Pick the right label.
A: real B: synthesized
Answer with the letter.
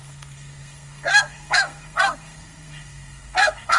B